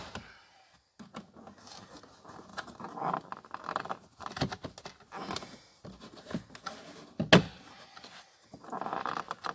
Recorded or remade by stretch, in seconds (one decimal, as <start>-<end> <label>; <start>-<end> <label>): 0.0-9.5 recorded